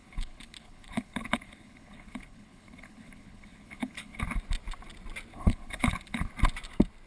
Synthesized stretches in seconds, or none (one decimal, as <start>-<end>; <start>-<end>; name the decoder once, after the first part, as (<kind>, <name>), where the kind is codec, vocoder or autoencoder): 0.0-4.2 (codec, HILCodec); 5.3-6.3